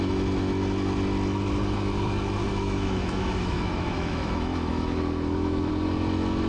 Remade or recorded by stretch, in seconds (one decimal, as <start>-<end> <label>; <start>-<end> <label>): 0.0-2.4 recorded; 2.4-5.7 remade; 5.7-6.5 recorded